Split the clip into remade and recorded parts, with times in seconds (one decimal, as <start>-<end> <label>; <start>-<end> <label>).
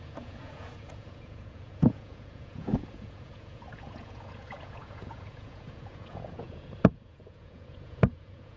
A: 0.0-8.6 remade